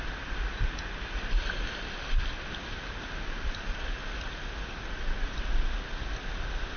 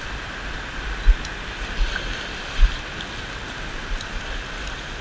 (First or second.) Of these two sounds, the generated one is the first